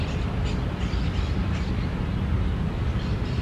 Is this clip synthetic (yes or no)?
no